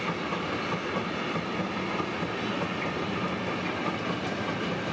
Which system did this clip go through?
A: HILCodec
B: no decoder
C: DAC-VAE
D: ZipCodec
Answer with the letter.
B